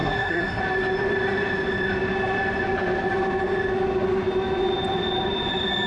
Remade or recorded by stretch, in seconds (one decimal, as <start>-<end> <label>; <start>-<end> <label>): 0.0-0.6 remade; 0.6-5.9 recorded